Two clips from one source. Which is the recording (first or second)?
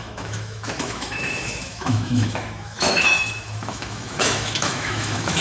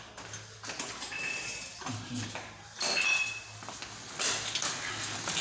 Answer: second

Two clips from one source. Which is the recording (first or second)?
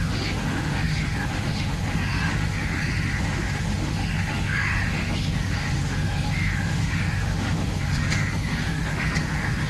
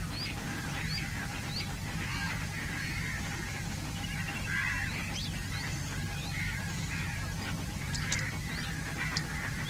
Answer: second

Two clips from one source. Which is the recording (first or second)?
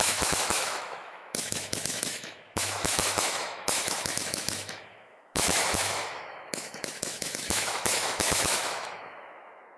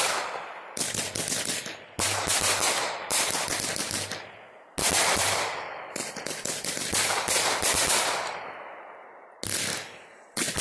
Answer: second